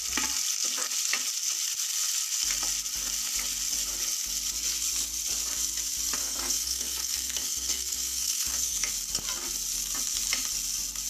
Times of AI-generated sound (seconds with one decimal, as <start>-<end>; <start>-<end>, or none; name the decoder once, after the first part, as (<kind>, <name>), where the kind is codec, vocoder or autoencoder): 6.2-8.9 (codec, SNAC)